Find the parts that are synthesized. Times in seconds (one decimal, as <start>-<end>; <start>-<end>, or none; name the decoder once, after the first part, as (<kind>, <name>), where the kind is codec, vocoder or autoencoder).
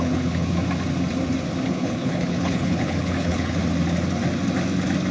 0.0-0.5 (codec, HILCodec); 1.7-3.6